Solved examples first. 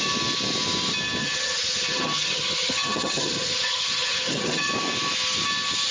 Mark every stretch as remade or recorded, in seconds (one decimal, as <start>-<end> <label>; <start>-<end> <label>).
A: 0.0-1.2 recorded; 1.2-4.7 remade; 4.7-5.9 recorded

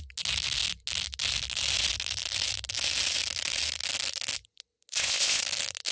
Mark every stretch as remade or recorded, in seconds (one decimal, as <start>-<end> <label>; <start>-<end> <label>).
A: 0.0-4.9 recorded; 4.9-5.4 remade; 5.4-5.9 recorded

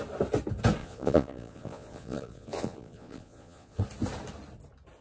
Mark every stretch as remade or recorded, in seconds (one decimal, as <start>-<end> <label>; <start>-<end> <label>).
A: 0.0-0.8 recorded; 0.8-3.8 remade; 3.8-5.0 recorded

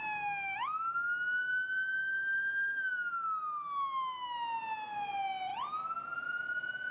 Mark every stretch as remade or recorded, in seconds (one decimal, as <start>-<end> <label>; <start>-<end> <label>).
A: 0.0-6.9 recorded

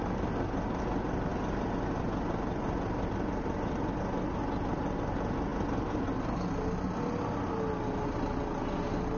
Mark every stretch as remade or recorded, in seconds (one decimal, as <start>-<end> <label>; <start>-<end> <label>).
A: 0.0-9.2 recorded

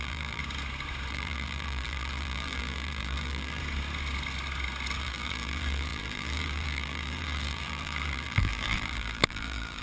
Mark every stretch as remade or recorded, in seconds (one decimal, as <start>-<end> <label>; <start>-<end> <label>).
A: 0.0-0.4 remade; 0.4-1.1 recorded; 1.1-3.6 remade; 3.6-5.0 recorded; 5.0-9.8 remade